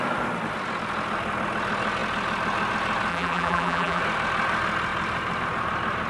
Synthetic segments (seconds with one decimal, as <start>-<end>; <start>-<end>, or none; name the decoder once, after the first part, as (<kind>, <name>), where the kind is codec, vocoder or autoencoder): 3.1-4.0 (vocoder, BigVGAN v2)